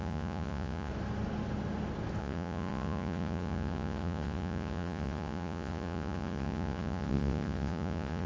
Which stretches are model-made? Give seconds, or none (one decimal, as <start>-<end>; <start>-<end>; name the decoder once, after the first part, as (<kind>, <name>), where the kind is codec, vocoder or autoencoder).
0.0-0.9 (vocoder, Vocos); 2.2-8.3